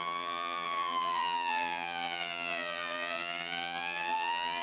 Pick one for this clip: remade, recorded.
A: remade